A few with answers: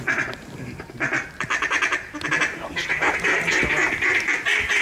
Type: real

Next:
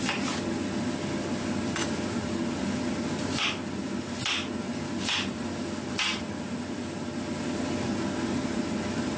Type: real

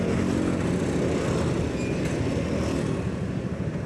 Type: real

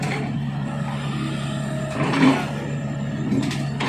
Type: real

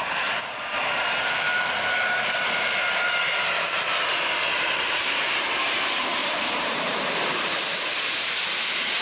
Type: fake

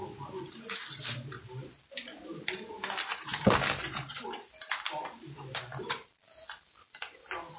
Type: real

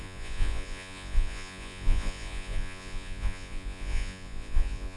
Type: fake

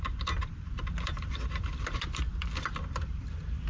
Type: fake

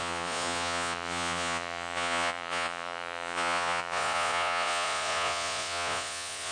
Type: fake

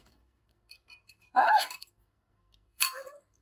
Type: fake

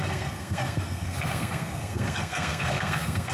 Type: fake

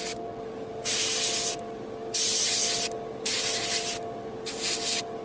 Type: real